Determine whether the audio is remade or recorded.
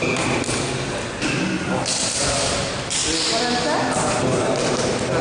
recorded